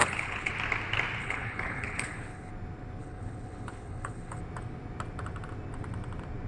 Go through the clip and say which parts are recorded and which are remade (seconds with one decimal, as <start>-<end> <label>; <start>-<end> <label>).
0.0-0.5 remade; 0.5-1.2 recorded; 1.2-2.5 remade; 2.5-3.0 recorded; 3.0-4.4 remade; 4.4-6.5 recorded